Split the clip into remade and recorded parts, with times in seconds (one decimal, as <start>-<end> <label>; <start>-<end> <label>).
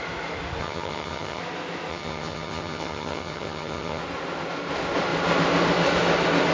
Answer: 0.0-0.6 recorded; 0.6-1.4 remade; 1.4-1.9 recorded; 1.9-4.0 remade; 4.0-6.5 recorded